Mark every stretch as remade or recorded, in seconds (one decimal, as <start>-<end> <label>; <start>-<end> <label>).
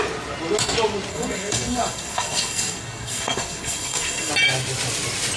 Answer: 0.0-1.1 recorded; 1.1-4.3 remade; 4.3-5.4 recorded